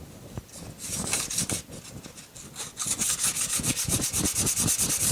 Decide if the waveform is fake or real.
real